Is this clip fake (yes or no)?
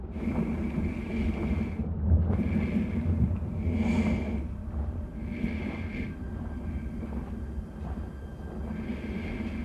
no